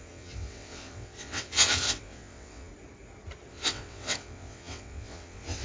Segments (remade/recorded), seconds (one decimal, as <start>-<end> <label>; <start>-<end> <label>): 0.0-2.7 remade; 2.7-3.5 recorded; 3.5-5.6 remade

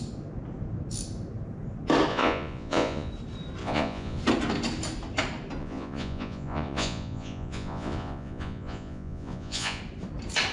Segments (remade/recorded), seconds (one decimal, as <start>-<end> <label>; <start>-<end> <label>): 0.0-2.1 recorded; 2.1-3.1 remade; 3.1-3.6 recorded; 3.6-4.2 remade; 4.2-5.6 recorded; 5.6-9.8 remade; 9.8-10.5 recorded

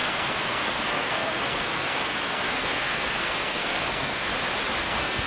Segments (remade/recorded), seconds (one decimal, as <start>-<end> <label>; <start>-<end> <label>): 0.0-4.3 remade; 4.3-4.8 recorded; 4.8-5.3 remade

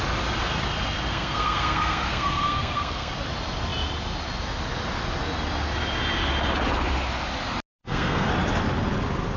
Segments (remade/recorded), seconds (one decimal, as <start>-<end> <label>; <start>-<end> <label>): 0.0-1.1 recorded; 1.1-3.1 remade; 3.1-7.8 recorded; 7.8-8.3 remade; 8.3-9.4 recorded

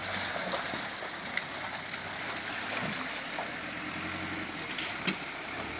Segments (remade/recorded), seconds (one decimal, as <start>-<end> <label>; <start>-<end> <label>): 0.0-5.8 recorded

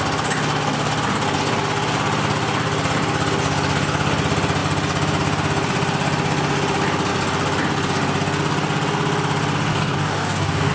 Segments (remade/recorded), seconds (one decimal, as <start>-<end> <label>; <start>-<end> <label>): 0.0-9.7 recorded; 9.7-10.7 remade

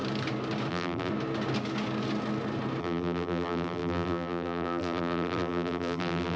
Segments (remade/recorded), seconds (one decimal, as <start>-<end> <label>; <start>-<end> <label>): 0.0-0.7 recorded; 0.7-1.1 remade; 1.1-2.8 recorded; 2.8-6.4 remade

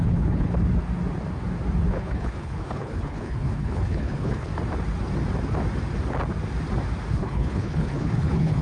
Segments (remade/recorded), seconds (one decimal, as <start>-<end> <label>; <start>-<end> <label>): 0.0-0.5 remade; 0.5-1.9 recorded; 1.9-4.5 remade; 4.5-7.1 recorded; 7.1-8.6 remade